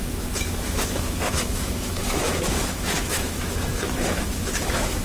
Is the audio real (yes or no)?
no